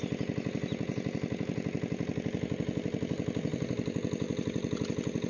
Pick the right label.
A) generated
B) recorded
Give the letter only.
B